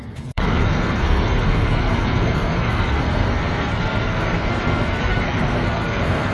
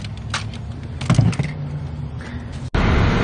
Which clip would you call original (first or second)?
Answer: second